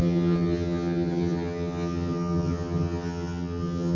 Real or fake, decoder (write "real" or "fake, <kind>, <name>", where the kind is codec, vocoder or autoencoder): fake, vocoder, HiFi-GAN